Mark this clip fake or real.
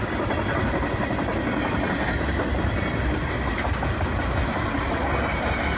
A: real